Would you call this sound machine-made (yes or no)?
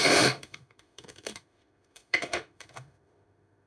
yes